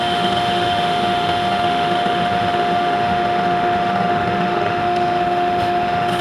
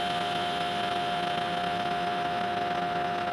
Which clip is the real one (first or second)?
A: second